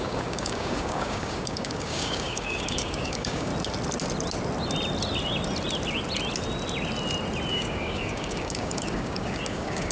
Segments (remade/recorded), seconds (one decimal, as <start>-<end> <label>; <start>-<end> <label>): 0.0-3.5 remade; 3.5-7.5 recorded; 7.5-9.9 remade